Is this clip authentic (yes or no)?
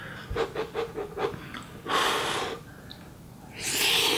yes